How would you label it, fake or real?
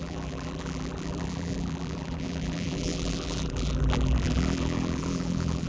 fake